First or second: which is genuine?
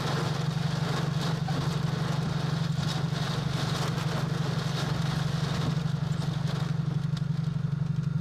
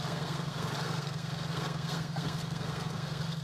first